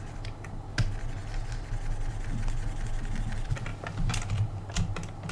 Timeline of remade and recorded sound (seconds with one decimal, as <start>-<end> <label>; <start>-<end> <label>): 0.0-5.3 recorded